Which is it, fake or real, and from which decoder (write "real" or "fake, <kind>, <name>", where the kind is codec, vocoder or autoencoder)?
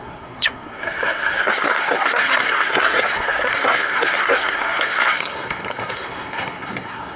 fake, codec, SNAC